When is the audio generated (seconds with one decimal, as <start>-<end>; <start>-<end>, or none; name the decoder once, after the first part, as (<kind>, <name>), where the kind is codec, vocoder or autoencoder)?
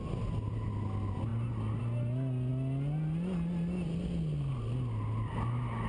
none